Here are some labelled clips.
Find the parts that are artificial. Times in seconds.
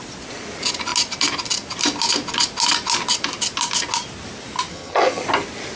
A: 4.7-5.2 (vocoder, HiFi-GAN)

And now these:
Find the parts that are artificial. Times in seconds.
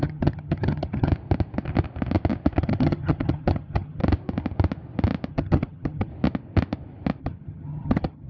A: 0.0-1.1 (vocoder, HiFi-GAN); 2.6-4.0; 5.3-6.1; 7.2-8.3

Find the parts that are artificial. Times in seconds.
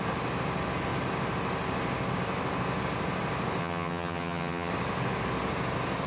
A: 3.6-4.7 (vocoder, HiFi-GAN)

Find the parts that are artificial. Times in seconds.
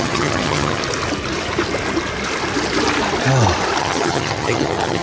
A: 0.0-0.8 (vocoder, HiFi-GAN); 3.8-5.0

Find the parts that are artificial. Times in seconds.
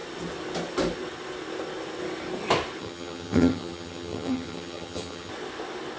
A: 2.8-5.3 (vocoder, HiFi-GAN)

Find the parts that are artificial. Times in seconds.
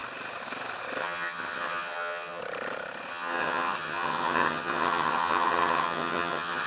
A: 1.0-2.4 (vocoder, HiFi-GAN); 3.1-6.7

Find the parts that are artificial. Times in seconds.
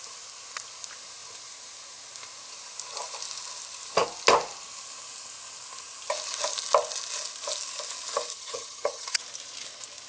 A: 8.3-9.2 (vocoder, HiFi-GAN)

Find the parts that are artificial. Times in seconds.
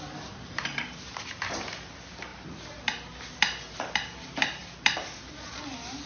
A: none